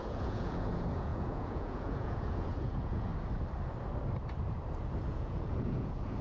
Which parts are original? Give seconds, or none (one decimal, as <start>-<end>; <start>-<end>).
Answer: 3.1-5.1